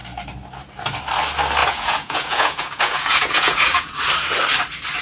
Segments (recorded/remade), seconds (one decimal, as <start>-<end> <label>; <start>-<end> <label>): 0.0-1.6 recorded; 1.6-3.9 remade; 3.9-5.0 recorded